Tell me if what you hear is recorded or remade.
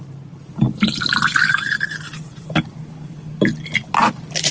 recorded